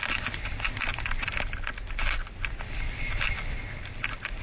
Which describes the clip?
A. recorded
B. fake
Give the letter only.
A